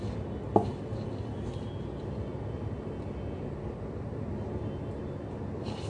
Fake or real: real